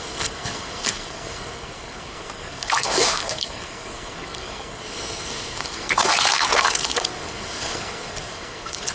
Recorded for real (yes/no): no